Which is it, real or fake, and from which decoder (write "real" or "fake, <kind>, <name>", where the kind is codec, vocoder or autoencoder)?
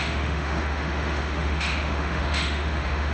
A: fake, autoencoder, DAC-VAE